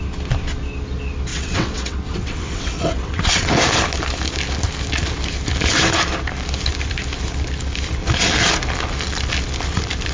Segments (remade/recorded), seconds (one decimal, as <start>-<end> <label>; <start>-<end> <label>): 0.0-1.3 recorded; 1.3-3.5 remade; 3.5-10.1 recorded